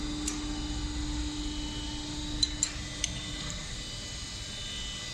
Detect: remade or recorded recorded